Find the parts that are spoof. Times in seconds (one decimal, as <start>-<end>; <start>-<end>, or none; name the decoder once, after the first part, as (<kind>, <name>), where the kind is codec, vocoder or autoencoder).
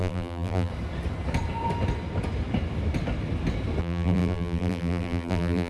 0.0-0.7 (vocoder, BigVGAN v2); 3.8-5.7